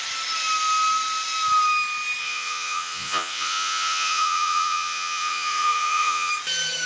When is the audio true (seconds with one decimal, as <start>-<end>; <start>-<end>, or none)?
0.0-2.2; 6.3-6.9